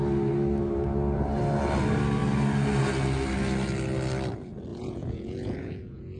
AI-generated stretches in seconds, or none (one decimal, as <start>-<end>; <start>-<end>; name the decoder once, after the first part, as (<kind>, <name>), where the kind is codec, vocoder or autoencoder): 4.7-6.2 (vocoder, Vocos)